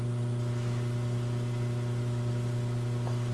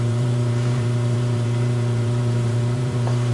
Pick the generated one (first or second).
second